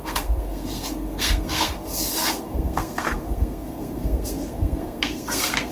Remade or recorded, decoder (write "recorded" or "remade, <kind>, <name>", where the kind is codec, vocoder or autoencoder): remade, codec, SNAC